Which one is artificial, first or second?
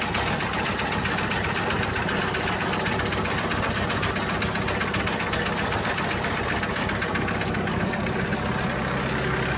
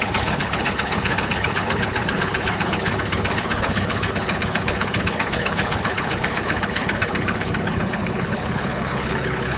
second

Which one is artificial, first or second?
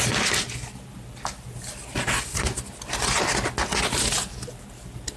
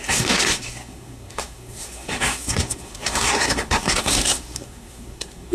second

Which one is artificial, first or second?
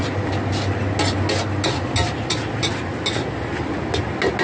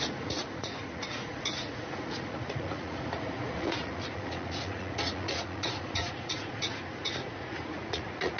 second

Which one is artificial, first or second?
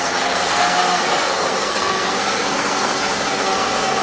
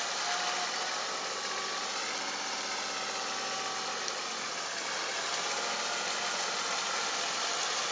first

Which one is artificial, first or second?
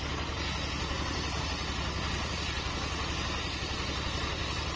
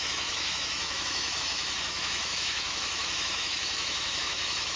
second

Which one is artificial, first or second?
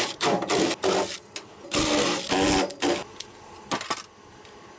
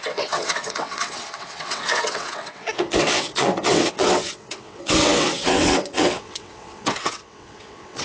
second